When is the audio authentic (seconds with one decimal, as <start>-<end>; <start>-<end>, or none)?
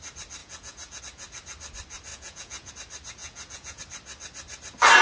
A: 0.0-0.4; 1.0-2.1; 2.7-3.2; 3.8-5.0